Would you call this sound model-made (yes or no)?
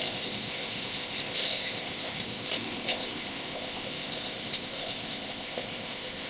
yes